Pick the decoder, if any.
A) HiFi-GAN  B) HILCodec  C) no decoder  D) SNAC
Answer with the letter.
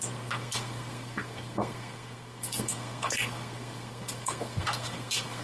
D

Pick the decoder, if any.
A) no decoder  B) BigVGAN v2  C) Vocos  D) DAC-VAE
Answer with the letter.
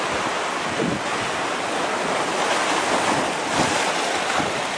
A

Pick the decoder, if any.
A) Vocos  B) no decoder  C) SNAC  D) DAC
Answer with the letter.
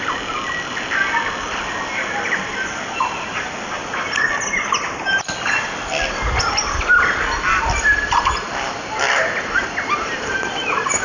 B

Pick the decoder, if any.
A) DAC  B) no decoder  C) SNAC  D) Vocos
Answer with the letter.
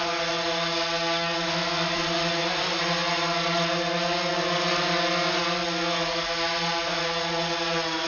B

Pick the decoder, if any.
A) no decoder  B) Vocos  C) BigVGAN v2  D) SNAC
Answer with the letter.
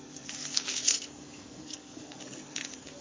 D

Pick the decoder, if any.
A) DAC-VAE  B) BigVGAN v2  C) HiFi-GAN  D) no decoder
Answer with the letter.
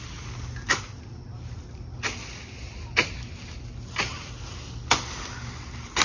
D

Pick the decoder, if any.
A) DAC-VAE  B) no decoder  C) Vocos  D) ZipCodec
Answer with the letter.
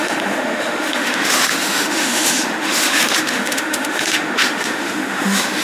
A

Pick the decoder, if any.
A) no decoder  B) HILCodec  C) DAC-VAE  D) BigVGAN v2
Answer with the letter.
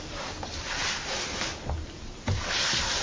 A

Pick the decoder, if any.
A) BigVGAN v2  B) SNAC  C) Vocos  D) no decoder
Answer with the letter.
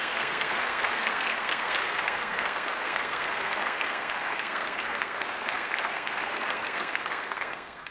B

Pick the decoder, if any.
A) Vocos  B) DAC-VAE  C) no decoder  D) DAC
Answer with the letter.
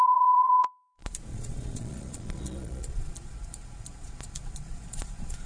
A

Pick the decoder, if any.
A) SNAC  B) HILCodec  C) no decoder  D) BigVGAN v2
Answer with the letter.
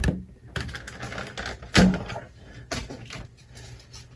C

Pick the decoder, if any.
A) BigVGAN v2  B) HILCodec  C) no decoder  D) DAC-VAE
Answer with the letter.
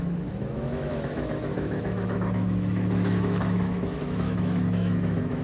D